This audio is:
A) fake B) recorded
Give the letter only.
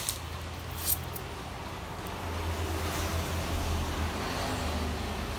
B